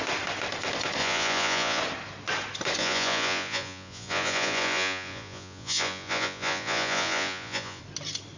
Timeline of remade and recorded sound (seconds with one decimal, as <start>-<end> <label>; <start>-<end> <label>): 0.0-1.0 recorded; 1.0-1.8 remade; 1.8-2.8 recorded; 2.8-7.8 remade; 7.8-8.4 recorded